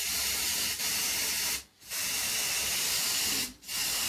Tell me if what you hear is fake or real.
real